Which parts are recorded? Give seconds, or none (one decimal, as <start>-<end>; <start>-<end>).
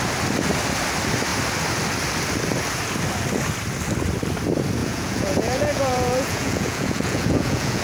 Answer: 0.0-4.8